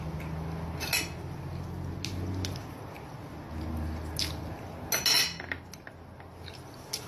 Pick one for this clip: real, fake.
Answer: real